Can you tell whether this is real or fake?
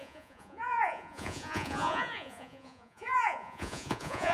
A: fake